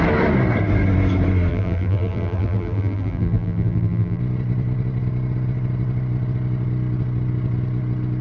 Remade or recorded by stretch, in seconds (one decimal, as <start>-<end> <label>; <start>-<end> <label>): 0.0-1.5 recorded; 1.5-4.2 remade; 4.2-8.2 recorded